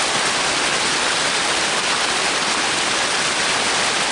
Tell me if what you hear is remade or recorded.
recorded